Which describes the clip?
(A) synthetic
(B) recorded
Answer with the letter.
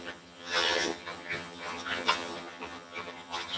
A